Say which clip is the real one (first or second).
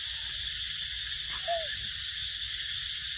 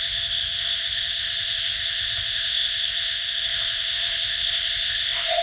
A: first